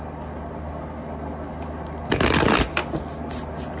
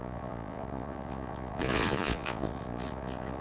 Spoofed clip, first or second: second